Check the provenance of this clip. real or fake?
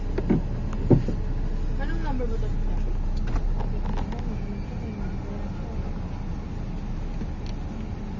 real